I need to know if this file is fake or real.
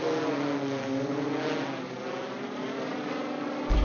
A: real